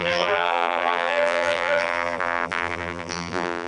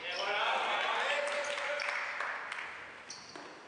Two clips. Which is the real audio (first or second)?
second